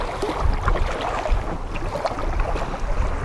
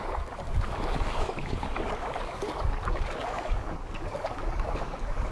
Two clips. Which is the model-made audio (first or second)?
second